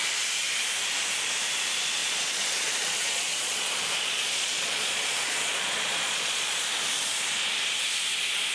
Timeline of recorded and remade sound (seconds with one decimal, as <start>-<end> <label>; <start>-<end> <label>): 0.0-2.0 recorded; 2.0-6.6 remade; 6.6-8.5 recorded